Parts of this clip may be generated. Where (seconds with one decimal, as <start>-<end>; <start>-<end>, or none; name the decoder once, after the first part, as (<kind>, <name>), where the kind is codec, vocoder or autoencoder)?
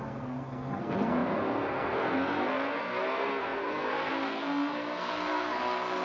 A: 0.0-6.0 (codec, SNAC)